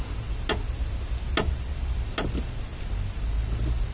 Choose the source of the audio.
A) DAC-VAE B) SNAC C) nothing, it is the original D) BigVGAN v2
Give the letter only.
C